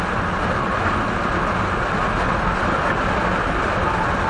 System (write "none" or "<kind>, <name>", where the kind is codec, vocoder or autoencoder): none